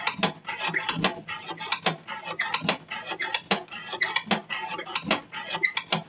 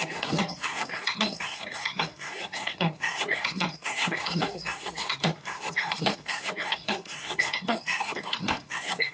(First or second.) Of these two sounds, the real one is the first